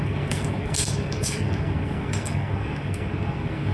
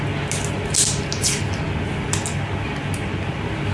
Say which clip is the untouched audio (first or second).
second